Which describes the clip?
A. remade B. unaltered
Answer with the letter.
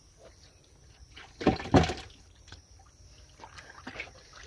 B